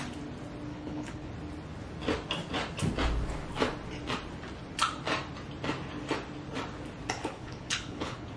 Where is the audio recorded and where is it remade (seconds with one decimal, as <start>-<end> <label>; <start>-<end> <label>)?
0.0-0.7 recorded; 0.7-1.3 remade; 1.3-7.2 recorded; 7.2-8.4 remade